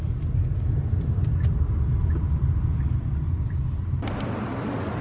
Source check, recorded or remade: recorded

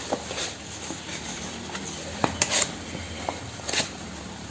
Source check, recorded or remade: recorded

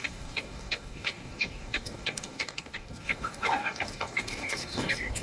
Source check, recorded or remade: remade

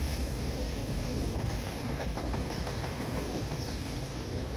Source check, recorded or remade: remade